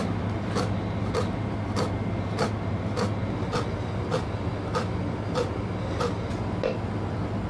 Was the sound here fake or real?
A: real